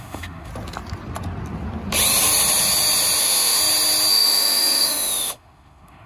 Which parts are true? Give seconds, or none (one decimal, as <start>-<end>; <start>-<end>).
0.5-3.2; 3.6-4.1